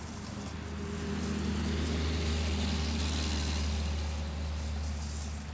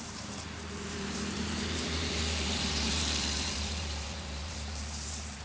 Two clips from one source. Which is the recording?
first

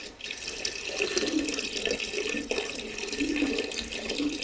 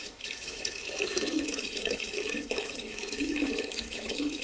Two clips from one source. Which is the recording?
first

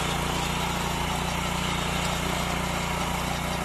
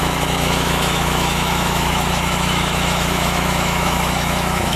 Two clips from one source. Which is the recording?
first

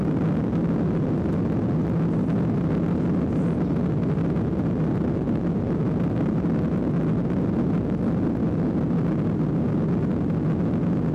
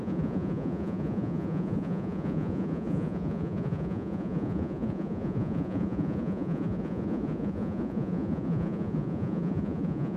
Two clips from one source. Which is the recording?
first